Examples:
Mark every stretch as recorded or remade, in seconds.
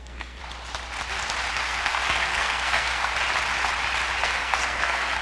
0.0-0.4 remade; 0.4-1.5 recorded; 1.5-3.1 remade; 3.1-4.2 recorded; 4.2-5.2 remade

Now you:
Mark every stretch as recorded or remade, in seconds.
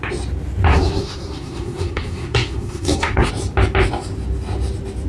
0.0-0.7 recorded; 0.7-3.3 remade; 3.3-5.1 recorded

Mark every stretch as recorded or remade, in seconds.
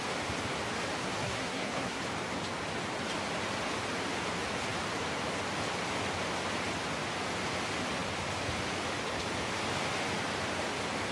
0.0-1.0 recorded; 1.0-2.0 remade; 2.0-11.1 recorded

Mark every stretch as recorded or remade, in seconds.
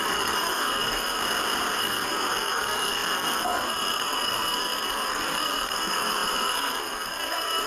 0.0-1.2 remade; 1.2-1.8 recorded; 1.8-7.7 remade